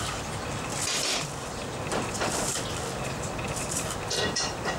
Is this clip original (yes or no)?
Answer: yes